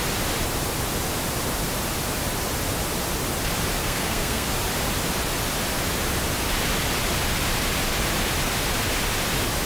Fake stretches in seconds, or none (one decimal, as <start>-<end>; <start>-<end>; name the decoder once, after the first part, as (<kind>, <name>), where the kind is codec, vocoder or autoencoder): 3.8-4.5 (codec, SNAC)